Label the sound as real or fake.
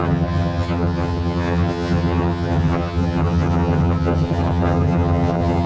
fake